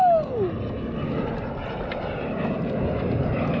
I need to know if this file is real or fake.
real